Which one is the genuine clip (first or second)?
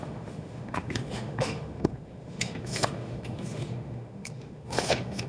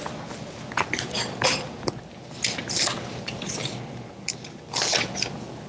second